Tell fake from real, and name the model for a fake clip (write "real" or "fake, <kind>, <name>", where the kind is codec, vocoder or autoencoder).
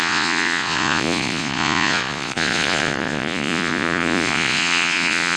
fake, vocoder, Vocos